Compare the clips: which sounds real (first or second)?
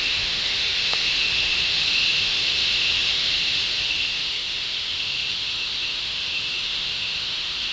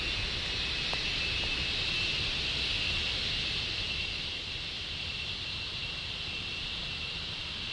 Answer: second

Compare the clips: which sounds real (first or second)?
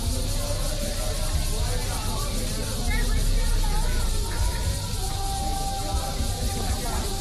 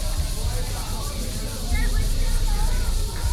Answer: first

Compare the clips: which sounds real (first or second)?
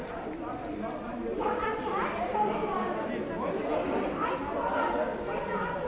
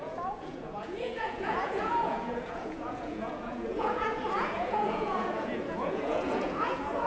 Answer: first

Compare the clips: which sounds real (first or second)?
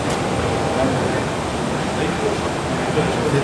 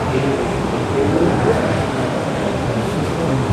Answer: first